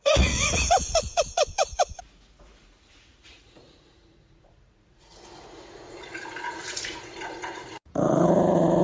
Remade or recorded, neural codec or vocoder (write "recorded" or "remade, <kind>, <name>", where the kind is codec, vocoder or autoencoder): remade, vocoder, Vocos